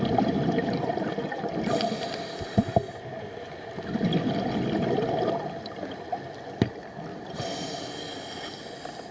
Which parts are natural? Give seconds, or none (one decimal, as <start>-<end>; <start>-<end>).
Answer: 0.0-7.1; 7.9-9.1